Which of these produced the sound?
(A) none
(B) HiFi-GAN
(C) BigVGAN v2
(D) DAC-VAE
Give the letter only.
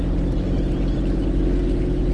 A